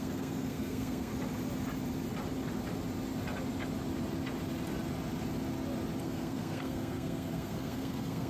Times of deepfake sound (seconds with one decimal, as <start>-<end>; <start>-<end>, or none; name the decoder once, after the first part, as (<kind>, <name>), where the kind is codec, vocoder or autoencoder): 0.0-1.1 (codec, SNAC); 6.0-8.3